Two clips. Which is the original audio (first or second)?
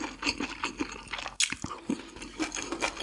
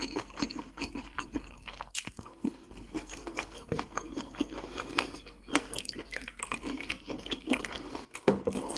first